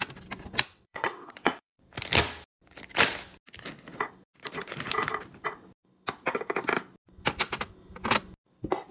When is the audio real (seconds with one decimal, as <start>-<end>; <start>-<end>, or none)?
0.0-0.7; 1.8-8.9